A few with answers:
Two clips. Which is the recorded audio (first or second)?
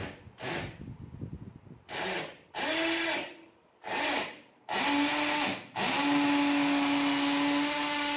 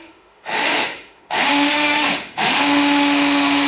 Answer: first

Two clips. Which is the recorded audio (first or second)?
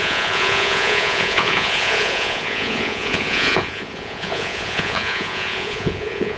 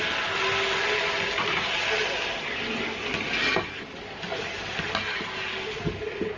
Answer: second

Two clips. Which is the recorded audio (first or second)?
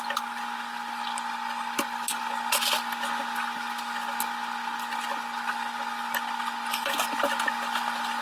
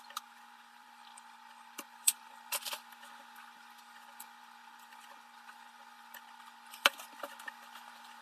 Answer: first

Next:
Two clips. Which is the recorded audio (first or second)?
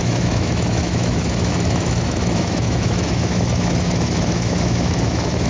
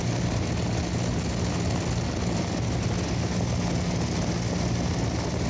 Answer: second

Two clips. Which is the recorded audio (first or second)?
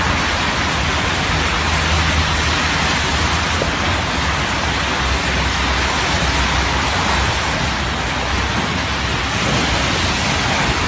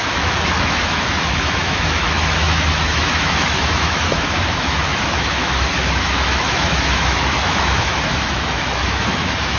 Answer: first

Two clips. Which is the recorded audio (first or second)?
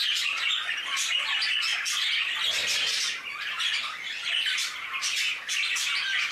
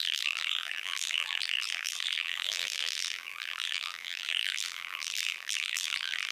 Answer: first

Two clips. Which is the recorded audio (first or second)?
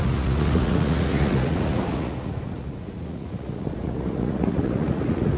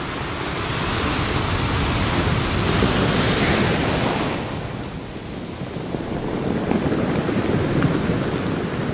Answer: second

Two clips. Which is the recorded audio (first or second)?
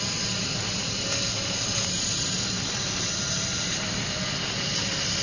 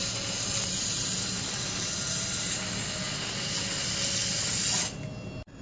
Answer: second